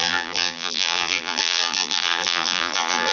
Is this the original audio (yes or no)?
no